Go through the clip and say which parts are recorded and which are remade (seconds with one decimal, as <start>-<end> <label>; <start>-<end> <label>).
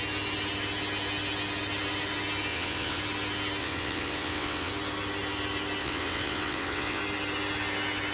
0.0-2.5 recorded; 2.5-3.0 remade; 3.0-3.6 recorded; 3.6-4.7 remade; 4.7-5.8 recorded; 5.8-7.0 remade; 7.0-8.1 recorded